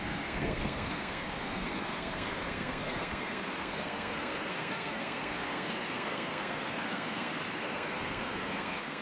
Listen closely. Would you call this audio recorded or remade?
remade